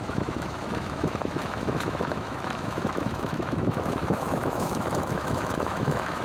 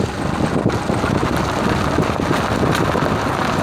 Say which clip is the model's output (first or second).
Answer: first